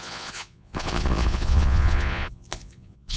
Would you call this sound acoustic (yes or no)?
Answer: no